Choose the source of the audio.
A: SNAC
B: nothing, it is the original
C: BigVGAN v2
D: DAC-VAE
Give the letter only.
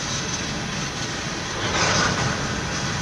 B